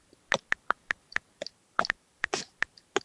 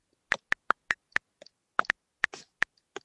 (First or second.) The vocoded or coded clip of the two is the first